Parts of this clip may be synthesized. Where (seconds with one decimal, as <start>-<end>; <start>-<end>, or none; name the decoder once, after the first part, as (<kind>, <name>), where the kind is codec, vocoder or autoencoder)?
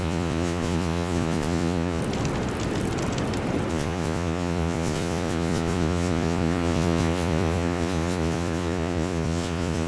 0.0-2.0 (vocoder, Vocos); 3.7-9.9